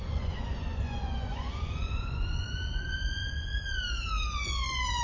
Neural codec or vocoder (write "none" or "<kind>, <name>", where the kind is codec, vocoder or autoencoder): vocoder, Vocos